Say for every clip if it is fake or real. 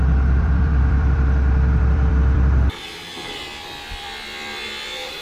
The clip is fake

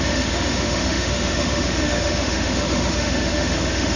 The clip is fake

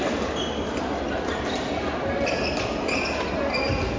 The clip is real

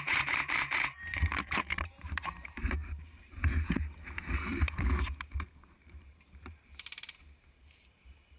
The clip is fake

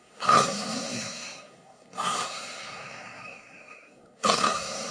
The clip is fake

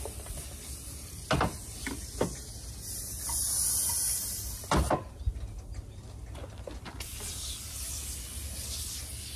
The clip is real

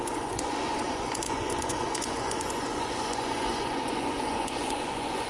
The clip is fake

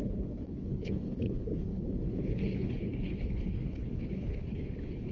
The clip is fake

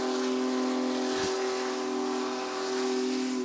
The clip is real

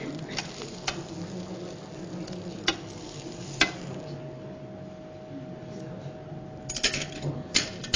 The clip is real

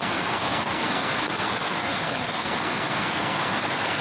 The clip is fake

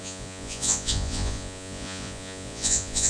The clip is fake